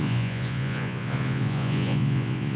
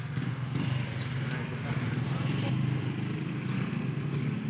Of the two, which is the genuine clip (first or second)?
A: second